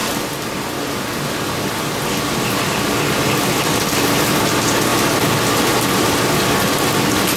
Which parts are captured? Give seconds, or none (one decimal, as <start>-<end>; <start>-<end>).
0.0-7.4